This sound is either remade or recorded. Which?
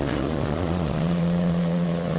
remade